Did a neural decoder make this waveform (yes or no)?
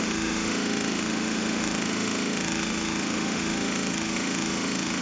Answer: yes